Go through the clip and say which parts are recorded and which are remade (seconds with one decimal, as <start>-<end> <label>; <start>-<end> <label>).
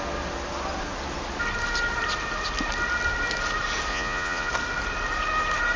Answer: 0.0-3.9 recorded; 3.9-4.5 remade; 4.5-5.8 recorded